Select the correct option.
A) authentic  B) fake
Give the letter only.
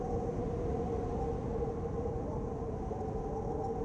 A